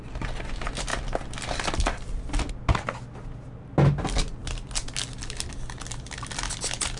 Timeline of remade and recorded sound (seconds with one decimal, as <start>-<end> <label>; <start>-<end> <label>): 0.0-7.0 recorded